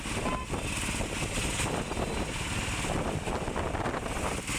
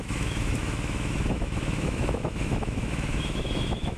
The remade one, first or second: second